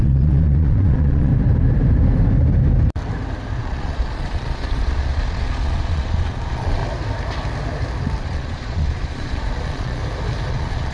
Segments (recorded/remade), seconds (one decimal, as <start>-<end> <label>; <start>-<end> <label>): 0.0-1.3 remade; 1.3-3.6 recorded; 3.6-6.8 remade; 6.8-8.2 recorded; 8.2-10.0 remade; 10.0-10.5 recorded; 10.5-10.9 remade